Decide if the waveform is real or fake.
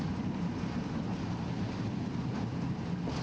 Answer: real